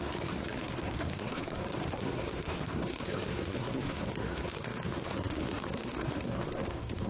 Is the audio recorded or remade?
remade